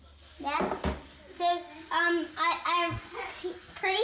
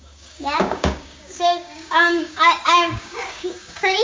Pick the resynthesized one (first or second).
second